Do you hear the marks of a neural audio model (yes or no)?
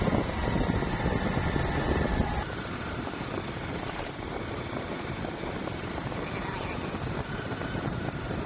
no